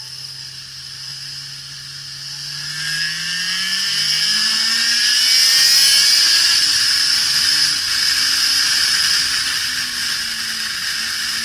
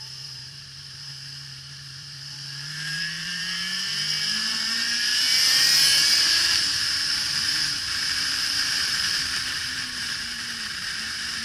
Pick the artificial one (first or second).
second